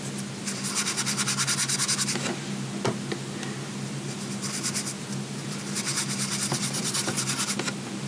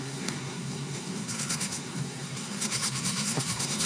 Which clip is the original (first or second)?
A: first